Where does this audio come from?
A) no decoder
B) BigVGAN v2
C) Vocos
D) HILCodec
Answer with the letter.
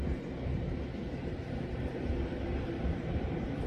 B